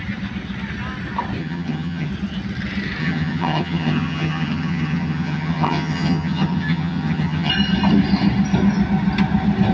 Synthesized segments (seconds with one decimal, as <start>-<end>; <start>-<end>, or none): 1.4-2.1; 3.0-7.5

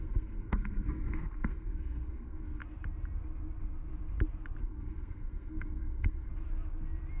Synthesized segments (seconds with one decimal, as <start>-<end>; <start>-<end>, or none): 0.0-2.6; 4.6-6.3

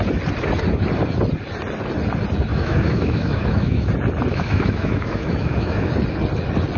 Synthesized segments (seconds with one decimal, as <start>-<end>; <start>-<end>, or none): 2.5-3.9; 4.3-5.9

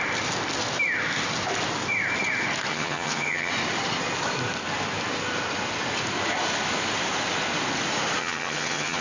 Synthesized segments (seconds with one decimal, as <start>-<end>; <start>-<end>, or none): 2.7-3.5; 8.2-9.0

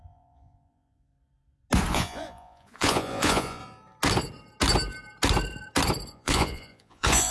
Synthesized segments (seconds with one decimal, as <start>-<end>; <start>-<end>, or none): 0.0-1.1; 1.9-3.6; 6.1-7.3